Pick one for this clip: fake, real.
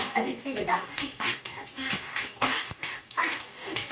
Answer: fake